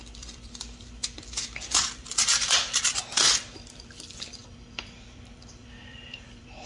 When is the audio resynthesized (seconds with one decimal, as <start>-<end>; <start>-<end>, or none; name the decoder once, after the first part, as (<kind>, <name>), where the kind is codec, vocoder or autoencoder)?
0.0-4.4 (vocoder, BigVGAN v2); 5.0-6.7